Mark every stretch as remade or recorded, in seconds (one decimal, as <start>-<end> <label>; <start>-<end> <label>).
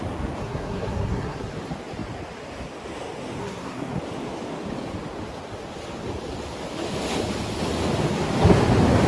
0.0-0.4 recorded; 0.4-1.5 remade; 1.5-3.4 recorded; 3.4-4.0 remade; 4.0-9.1 recorded